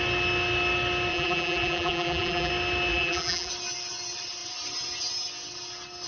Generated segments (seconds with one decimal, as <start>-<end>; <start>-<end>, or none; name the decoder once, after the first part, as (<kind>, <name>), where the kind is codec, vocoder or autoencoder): 1.1-2.5 (vocoder, BigVGAN v2); 2.9-3.5